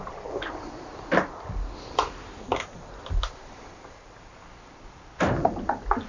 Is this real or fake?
real